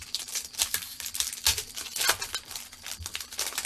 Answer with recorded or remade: remade